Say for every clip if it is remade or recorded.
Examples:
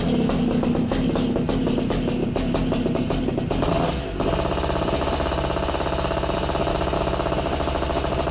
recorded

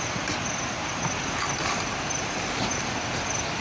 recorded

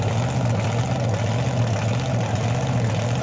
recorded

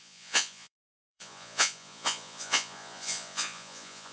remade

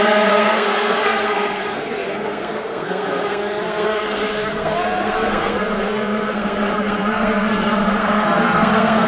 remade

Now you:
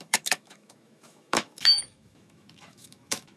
remade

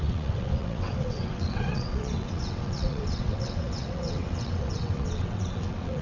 remade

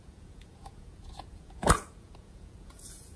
remade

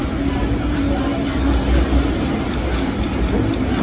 recorded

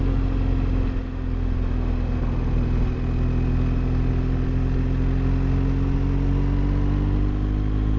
recorded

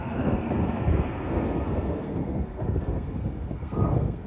remade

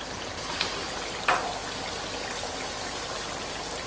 recorded